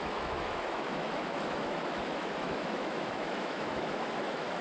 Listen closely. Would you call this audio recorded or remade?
remade